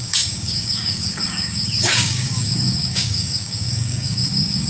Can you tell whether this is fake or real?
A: fake